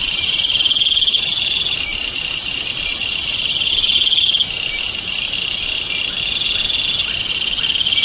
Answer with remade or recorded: recorded